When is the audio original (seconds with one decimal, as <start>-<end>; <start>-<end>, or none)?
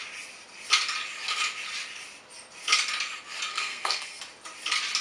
0.0-3.5; 4.2-5.0